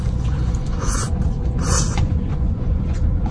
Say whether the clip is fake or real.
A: fake